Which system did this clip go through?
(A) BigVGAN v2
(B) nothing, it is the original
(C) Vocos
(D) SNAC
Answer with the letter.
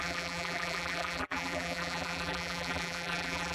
A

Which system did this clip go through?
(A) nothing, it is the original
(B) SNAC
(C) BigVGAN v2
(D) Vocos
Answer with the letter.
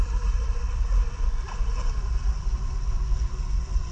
A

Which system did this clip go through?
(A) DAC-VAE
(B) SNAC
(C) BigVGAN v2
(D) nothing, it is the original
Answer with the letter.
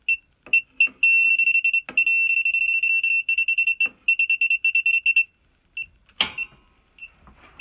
D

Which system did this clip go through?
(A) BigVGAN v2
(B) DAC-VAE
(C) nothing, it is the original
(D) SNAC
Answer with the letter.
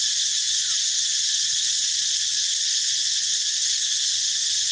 C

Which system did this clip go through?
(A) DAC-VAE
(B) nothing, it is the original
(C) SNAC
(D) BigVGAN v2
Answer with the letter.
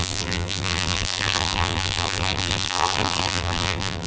D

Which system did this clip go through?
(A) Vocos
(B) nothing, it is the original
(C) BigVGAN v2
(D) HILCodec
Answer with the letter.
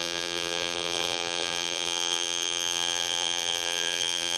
C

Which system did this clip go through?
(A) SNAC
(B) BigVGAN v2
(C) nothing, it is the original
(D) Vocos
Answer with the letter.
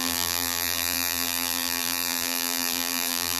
B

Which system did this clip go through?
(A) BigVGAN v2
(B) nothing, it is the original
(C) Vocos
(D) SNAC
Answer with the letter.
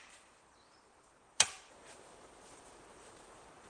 A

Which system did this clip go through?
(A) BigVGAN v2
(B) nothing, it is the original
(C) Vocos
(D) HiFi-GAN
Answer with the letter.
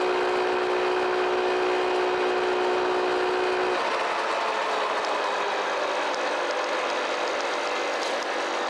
B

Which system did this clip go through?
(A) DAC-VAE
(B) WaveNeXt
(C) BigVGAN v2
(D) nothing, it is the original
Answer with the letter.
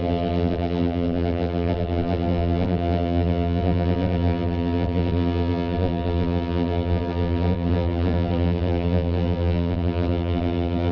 C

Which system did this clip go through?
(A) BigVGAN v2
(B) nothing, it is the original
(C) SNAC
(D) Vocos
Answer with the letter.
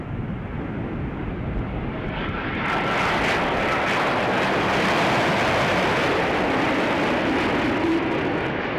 B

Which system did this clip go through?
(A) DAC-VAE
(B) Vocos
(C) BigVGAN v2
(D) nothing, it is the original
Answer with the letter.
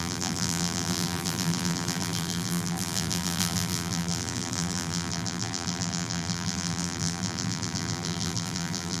C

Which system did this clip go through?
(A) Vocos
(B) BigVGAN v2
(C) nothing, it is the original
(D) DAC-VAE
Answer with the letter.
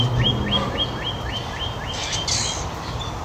C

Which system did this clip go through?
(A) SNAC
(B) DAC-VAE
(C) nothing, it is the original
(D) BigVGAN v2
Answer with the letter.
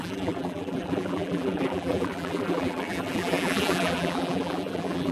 D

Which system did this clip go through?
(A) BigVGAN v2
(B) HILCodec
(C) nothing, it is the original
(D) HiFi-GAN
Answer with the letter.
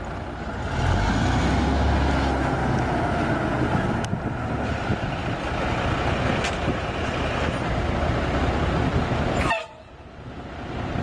C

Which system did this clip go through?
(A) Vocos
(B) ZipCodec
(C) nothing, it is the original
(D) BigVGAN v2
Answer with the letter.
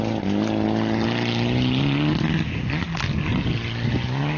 C